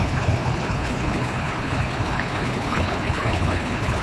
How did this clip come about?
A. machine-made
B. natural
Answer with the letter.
A